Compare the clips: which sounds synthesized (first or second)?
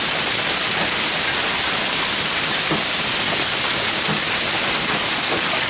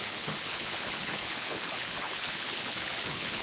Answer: second